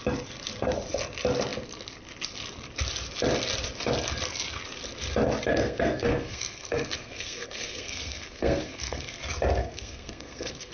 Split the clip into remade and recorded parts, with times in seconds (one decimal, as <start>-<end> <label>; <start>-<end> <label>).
0.0-5.5 recorded; 5.5-9.2 remade; 9.2-9.6 recorded; 9.6-10.7 remade